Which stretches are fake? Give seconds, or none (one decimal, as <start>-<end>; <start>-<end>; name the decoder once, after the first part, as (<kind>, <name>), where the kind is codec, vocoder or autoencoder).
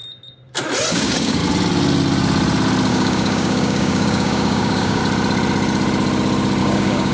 0.9-1.4 (codec, DAC); 2.9-5.0; 6.6-7.1